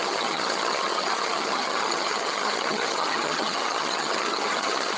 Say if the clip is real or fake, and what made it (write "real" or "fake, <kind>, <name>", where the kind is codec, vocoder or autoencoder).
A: fake, vocoder, HiFi-GAN